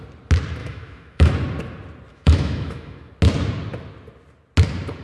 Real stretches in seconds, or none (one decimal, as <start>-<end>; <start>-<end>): 0.0-0.6; 1.3-2.1; 3.1-5.0